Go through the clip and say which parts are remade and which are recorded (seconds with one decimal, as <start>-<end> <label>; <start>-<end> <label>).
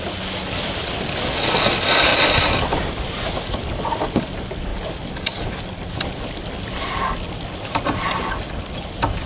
0.0-9.3 recorded